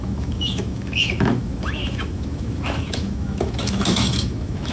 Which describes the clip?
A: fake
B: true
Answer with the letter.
A